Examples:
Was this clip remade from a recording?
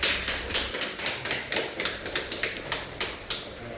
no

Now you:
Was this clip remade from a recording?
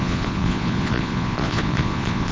yes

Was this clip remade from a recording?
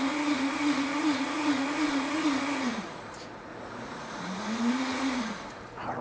yes